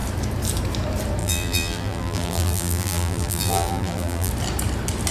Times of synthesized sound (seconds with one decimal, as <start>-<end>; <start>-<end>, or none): 1.2-4.3